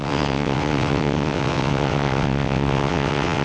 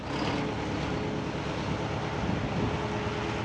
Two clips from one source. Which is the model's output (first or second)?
first